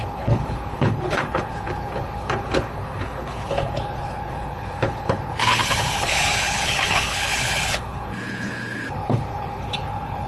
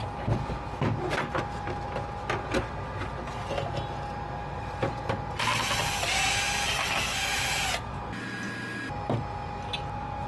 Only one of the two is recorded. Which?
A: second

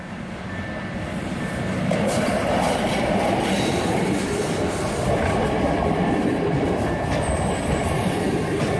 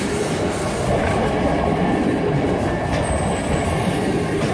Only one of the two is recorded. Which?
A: second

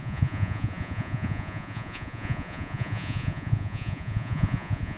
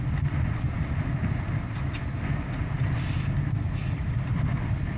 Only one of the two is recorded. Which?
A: second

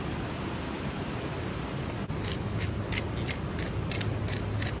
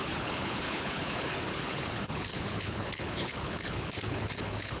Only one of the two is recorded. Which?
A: first